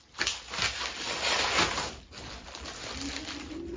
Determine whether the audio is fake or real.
real